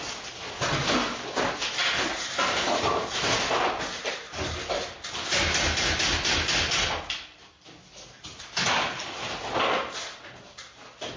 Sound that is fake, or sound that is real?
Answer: real